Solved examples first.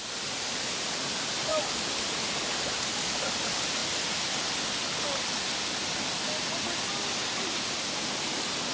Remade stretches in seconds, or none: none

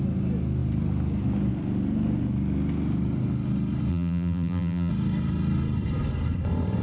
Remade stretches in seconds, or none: 3.9-4.9 (vocoder, BigVGAN v2)